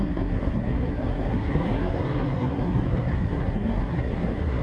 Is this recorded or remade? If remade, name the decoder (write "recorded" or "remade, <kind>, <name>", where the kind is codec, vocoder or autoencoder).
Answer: remade, codec, SNAC